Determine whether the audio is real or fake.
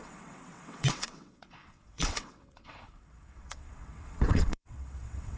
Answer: fake